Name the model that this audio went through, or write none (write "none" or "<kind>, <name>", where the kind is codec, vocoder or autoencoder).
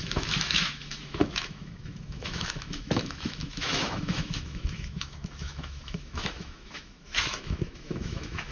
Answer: autoencoder, DAC-VAE